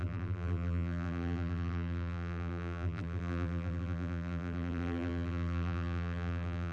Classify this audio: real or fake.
fake